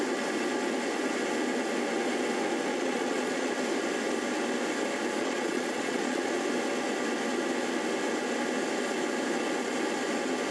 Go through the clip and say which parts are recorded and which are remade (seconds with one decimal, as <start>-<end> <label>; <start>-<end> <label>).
0.0-2.7 recorded; 2.7-3.5 remade; 3.5-5.2 recorded; 5.2-6.4 remade; 6.4-10.5 recorded